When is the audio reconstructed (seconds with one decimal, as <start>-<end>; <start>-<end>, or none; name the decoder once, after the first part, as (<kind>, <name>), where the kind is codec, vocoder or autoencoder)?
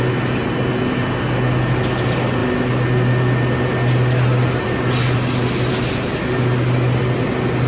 none